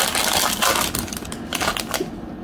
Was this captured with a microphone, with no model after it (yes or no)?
yes